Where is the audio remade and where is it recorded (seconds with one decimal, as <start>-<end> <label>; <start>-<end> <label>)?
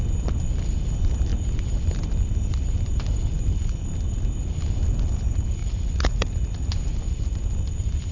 0.0-5.6 recorded; 5.6-6.7 remade; 6.7-8.1 recorded